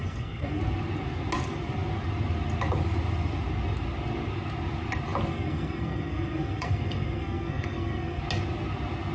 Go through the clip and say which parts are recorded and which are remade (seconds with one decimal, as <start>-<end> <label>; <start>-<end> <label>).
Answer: 0.0-0.6 remade; 0.6-5.3 recorded; 5.3-8.2 remade; 8.2-9.1 recorded